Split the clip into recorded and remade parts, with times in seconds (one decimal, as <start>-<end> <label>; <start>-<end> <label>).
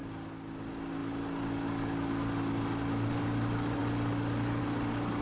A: 0.0-5.2 recorded